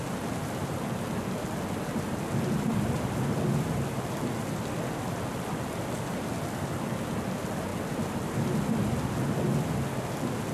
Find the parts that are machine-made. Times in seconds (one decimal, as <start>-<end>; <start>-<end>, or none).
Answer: none